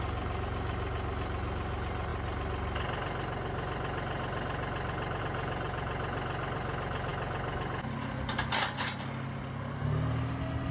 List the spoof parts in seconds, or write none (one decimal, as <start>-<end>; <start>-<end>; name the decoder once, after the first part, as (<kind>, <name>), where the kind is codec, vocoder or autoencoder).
none